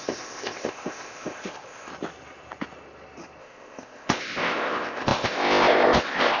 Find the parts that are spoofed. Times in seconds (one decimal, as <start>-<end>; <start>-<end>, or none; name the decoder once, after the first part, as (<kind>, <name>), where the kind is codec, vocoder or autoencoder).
0.0-1.9 (codec, ZipCodec); 3.4-6.4